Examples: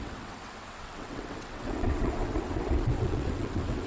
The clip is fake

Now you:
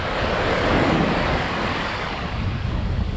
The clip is fake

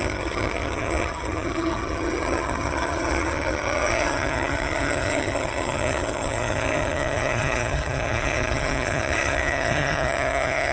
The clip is fake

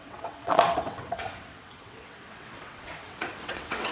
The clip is fake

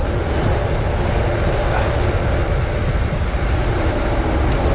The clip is real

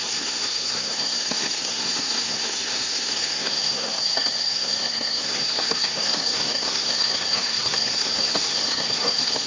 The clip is fake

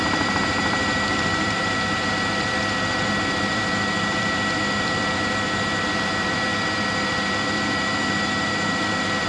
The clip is fake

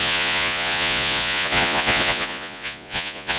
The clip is fake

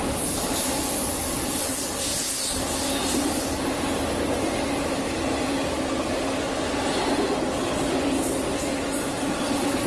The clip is real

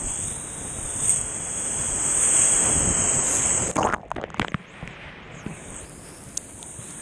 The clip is real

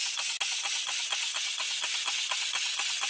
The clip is real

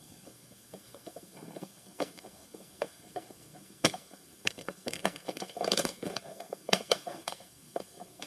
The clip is fake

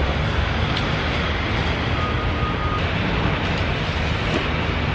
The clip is real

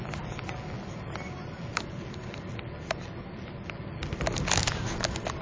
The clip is real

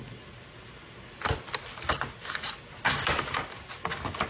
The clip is real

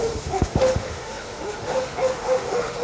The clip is fake